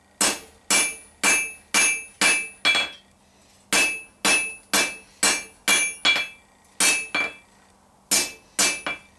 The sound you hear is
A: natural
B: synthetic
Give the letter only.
A